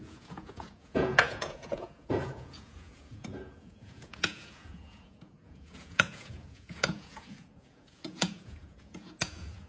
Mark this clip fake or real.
fake